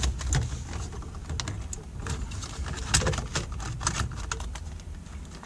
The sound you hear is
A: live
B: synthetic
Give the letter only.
A